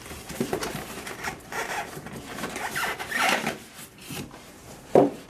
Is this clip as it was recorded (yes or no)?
no